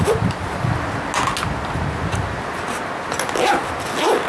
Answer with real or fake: real